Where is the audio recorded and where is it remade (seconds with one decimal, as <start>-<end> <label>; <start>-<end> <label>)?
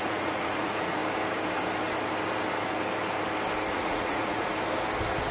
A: 0.0-1.0 remade; 1.0-3.7 recorded; 3.7-4.5 remade; 4.5-5.3 recorded